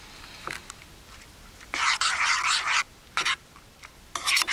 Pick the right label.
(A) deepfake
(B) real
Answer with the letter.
B